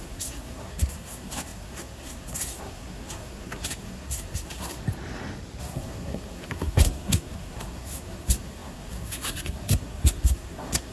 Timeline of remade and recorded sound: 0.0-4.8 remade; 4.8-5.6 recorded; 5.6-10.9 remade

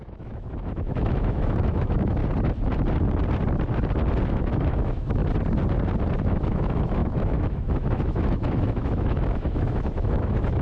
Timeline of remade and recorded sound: 0.0-2.2 remade; 2.2-4.3 recorded; 4.3-5.2 remade; 5.2-6.2 recorded; 6.2-10.6 remade

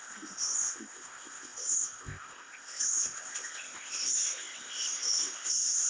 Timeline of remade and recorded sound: 0.0-5.9 remade

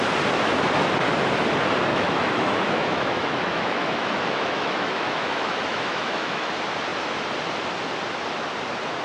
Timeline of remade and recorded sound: 0.0-1.9 recorded; 1.9-6.5 remade; 6.5-9.0 recorded

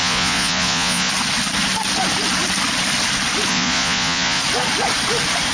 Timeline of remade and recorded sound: 0.0-1.1 remade; 1.1-3.5 recorded; 3.5-4.4 remade; 4.4-5.5 recorded

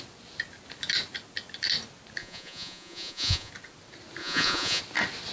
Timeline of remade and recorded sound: 0.0-2.2 recorded; 2.2-3.5 remade; 3.5-4.2 recorded; 4.2-4.8 remade; 4.8-5.3 recorded